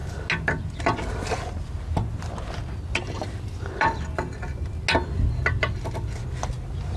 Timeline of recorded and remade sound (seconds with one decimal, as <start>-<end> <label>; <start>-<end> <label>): 0.0-7.0 recorded